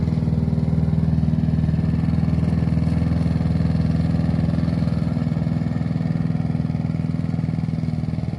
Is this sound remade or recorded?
recorded